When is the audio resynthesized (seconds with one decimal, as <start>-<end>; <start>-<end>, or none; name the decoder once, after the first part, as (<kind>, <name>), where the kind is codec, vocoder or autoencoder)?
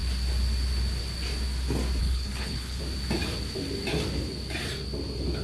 2.0-2.8 (codec, HILCodec)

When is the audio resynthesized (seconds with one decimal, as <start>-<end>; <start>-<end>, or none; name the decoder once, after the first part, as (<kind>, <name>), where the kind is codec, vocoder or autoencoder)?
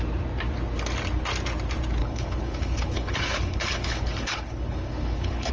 2.0-5.5 (codec, HILCodec)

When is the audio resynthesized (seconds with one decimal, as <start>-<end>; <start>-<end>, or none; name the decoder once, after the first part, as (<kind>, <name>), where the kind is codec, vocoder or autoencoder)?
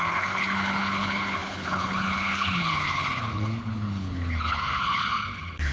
0.0-5.7 (codec, HILCodec)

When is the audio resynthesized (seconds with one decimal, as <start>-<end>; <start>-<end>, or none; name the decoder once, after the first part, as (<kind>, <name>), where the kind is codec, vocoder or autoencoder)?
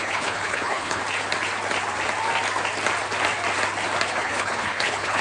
0.0-1.0 (codec, HILCodec); 4.1-5.2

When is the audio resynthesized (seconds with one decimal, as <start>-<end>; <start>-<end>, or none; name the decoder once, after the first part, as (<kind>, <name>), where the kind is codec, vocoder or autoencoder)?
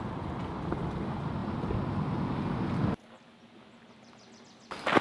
none